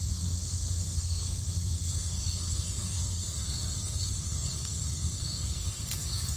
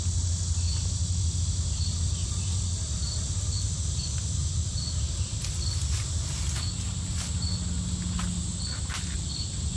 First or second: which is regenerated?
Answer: first